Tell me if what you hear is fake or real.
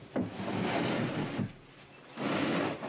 real